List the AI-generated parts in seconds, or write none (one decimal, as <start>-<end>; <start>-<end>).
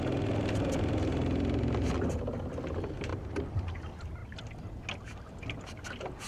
3.1-3.8